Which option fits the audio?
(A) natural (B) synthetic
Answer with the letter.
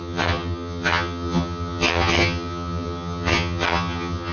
B